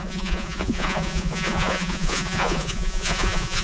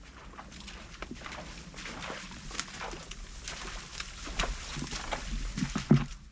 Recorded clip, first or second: second